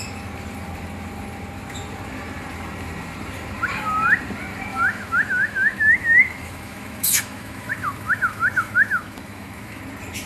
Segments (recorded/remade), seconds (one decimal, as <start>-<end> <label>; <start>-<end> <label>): 0.0-4.7 recorded; 4.7-9.8 remade; 9.8-10.3 recorded